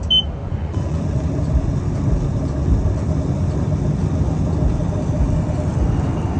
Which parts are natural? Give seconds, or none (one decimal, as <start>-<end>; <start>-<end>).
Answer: 0.0-0.4; 1.0-6.4